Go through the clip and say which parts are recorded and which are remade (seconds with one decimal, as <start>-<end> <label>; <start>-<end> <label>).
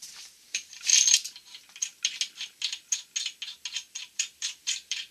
0.0-0.9 remade; 0.9-4.0 recorded; 4.0-5.1 remade